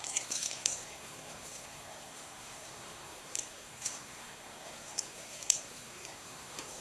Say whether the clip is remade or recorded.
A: remade